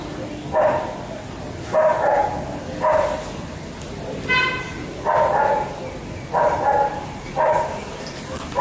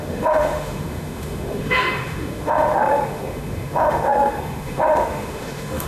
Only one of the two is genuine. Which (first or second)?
first